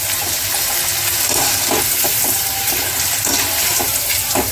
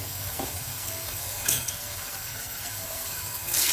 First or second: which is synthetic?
second